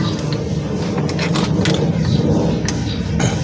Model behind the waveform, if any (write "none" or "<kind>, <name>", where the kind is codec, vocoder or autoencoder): none